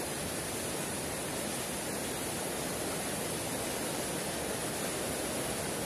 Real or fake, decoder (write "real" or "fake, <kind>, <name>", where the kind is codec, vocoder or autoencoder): real